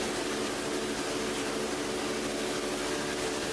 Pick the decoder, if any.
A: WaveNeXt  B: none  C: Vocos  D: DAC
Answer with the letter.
B